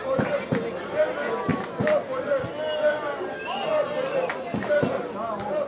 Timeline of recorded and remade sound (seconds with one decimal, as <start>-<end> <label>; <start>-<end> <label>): 0.0-5.7 recorded